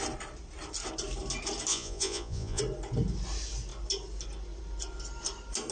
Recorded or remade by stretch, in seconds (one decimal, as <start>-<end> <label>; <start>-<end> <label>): 0.0-1.7 recorded; 1.7-2.6 remade; 2.6-5.7 recorded